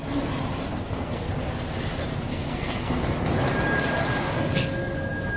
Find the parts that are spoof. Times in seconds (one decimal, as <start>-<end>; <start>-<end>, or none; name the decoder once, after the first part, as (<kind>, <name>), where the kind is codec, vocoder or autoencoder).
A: 0.8-1.3 (codec, SNAC); 2.3-3.0